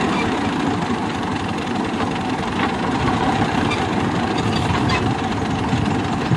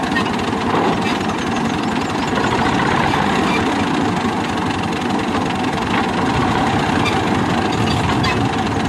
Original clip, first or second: second